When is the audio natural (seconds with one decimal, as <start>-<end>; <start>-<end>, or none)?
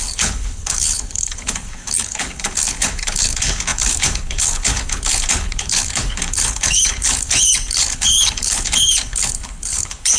none